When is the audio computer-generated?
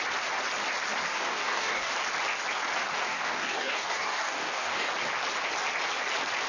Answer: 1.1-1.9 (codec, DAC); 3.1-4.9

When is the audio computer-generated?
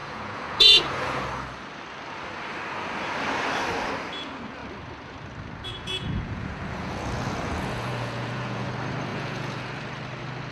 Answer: 0.0-1.2 (vocoder, Vocos); 5.7-8.7; 9.1-9.8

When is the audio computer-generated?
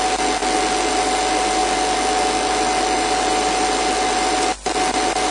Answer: 0.0-0.4 (vocoder, BigVGAN v2); 0.9-5.3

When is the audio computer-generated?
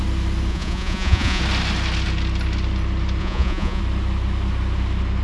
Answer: 0.5-1.4 (vocoder, Vocos); 3.2-3.8